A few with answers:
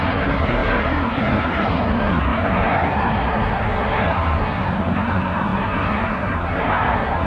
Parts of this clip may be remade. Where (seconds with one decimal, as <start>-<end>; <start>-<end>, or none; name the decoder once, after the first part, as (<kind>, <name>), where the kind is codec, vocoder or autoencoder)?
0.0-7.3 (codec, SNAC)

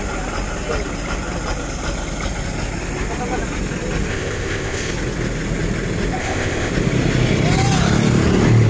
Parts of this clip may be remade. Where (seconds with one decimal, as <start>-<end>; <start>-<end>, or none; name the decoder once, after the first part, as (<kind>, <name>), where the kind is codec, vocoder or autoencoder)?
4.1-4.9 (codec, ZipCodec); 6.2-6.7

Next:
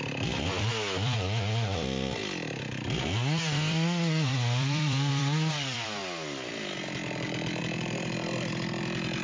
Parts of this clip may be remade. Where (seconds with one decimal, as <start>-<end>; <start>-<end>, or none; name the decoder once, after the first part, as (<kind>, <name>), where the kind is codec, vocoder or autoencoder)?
0.0-6.0 (vocoder, BigVGAN v2); 7.6-9.2